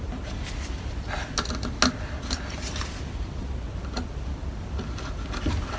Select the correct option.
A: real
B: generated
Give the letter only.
A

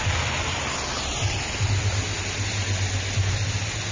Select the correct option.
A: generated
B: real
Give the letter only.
B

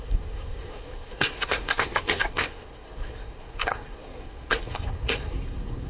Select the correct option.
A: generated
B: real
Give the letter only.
A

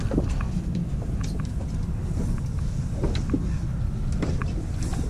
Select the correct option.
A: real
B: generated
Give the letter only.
A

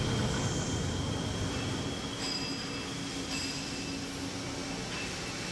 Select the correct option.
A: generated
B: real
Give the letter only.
B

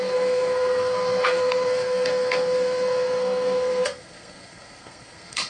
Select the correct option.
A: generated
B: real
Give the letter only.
A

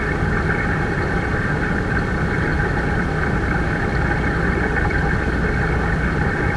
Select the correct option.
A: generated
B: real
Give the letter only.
B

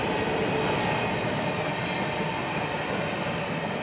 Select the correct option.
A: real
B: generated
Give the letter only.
A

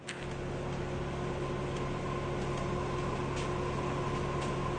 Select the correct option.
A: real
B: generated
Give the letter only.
A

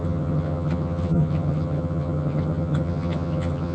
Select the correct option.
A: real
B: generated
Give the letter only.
B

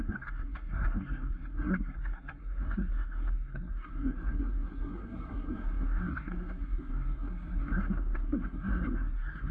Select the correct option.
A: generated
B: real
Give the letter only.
A